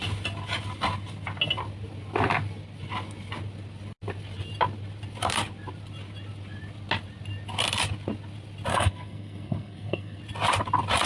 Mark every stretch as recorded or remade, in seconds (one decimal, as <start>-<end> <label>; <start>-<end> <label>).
0.0-8.7 recorded; 8.7-10.2 remade; 10.2-11.1 recorded